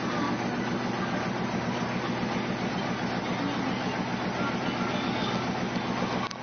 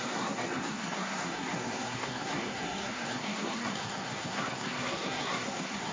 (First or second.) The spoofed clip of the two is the second